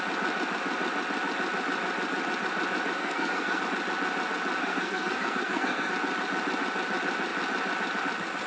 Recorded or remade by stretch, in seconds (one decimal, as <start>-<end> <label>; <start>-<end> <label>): 0.0-3.0 recorded; 3.0-3.6 remade; 3.6-4.6 recorded; 4.6-5.9 remade; 5.9-8.5 recorded